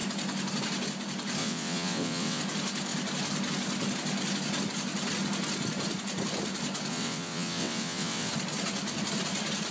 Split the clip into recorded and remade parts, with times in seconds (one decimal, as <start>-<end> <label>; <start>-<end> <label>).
0.0-1.4 recorded; 1.4-2.4 remade; 2.4-6.9 recorded; 6.9-8.3 remade; 8.3-9.7 recorded